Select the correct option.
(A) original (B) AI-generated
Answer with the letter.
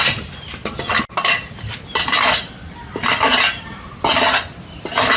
A